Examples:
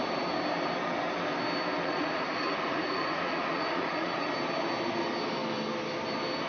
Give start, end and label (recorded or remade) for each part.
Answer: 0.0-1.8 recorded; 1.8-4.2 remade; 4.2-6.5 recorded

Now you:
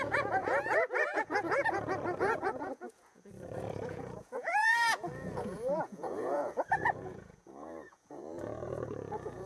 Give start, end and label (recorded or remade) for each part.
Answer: 0.0-9.5 remade